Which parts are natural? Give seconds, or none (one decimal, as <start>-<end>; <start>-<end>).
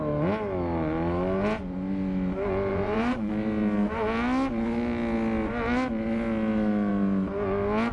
0.0-2.7; 3.3-7.9